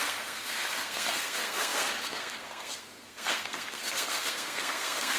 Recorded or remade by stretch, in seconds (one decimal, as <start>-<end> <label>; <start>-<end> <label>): 0.0-5.2 remade